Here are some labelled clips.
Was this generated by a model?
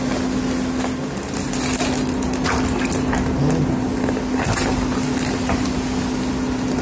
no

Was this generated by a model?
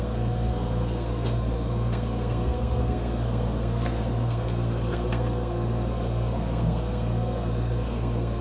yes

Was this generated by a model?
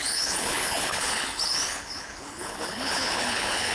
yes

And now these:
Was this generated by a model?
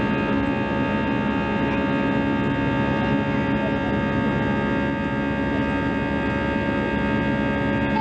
no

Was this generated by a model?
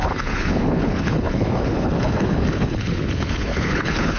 yes